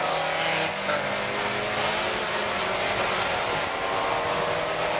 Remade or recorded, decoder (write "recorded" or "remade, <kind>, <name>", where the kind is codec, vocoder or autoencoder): recorded